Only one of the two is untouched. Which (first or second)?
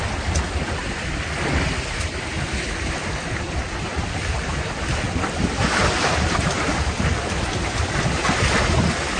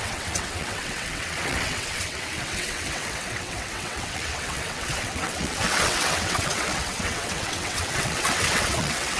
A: first